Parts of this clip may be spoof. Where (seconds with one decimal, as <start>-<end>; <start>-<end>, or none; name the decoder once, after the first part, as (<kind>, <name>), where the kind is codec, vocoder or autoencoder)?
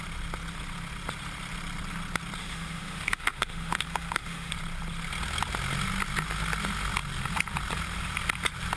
2.4-4.5 (autoencoder, DAC-VAE)